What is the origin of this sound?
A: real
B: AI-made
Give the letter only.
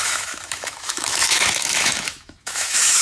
B